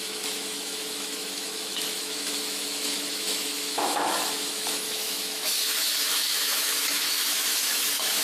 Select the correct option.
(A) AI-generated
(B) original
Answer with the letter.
A